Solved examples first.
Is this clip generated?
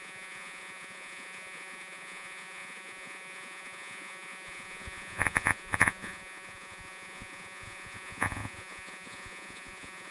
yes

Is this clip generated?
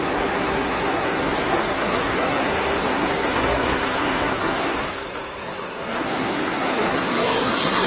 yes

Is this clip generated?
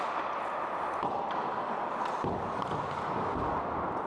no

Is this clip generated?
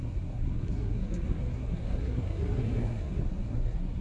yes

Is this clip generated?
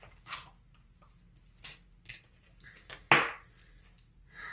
no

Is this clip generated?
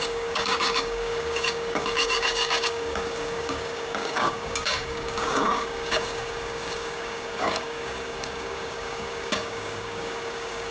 yes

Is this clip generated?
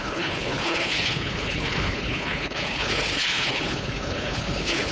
yes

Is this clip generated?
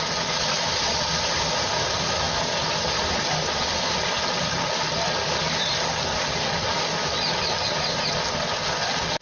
no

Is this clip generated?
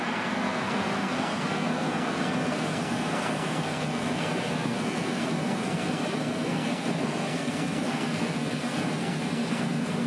yes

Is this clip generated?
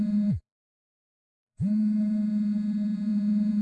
yes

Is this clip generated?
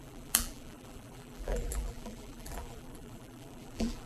yes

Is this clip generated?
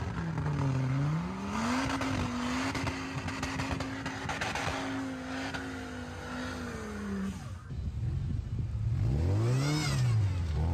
no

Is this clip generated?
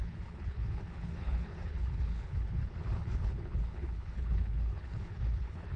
yes